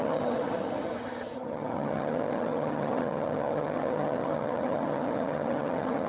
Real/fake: fake